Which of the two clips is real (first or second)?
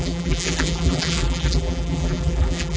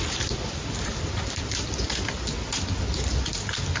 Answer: second